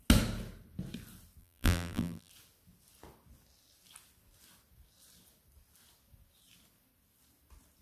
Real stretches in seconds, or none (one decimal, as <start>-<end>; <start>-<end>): 0.0-1.4; 2.3-7.8